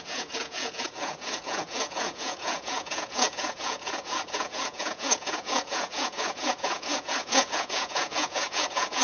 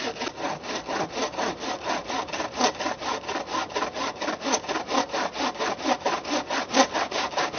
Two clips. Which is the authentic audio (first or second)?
second